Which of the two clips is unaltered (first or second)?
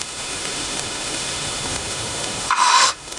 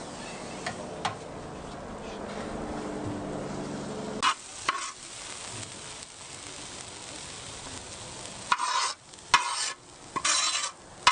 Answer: second